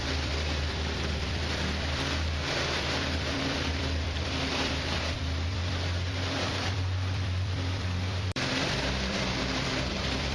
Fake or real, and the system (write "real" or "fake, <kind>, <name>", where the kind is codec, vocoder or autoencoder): fake, vocoder, BigVGAN v2